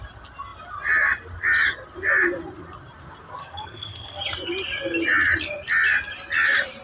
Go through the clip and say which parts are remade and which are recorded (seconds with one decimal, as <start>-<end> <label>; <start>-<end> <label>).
0.0-3.4 recorded; 3.4-4.2 remade; 4.2-6.8 recorded